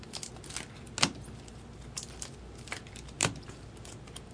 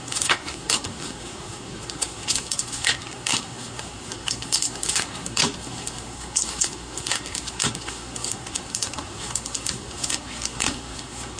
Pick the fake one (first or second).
second